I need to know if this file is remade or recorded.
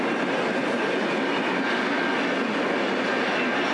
recorded